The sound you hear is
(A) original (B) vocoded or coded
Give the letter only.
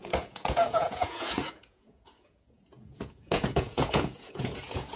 B